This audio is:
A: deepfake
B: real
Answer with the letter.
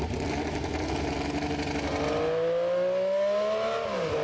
B